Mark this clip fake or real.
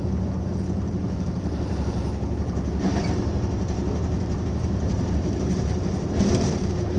fake